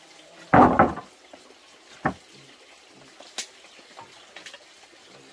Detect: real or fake real